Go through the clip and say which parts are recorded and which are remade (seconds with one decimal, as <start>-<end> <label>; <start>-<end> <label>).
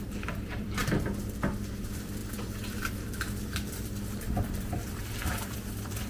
0.0-0.8 remade; 0.8-1.8 recorded; 1.8-2.2 remade; 2.2-2.9 recorded; 2.9-6.1 remade